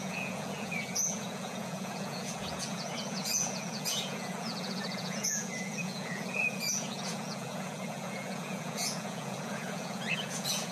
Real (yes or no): no